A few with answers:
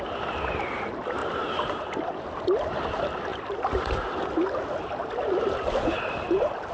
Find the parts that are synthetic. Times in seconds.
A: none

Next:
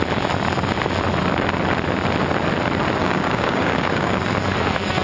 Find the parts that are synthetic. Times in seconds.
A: 3.0-4.2 (codec, DAC)

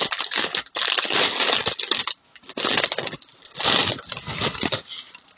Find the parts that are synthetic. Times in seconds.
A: none